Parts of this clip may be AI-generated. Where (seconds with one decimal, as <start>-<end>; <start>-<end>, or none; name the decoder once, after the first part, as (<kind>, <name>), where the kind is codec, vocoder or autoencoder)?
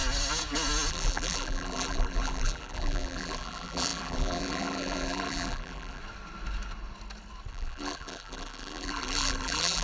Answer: 0.9-6.0 (vocoder, BigVGAN v2); 7.5-9.8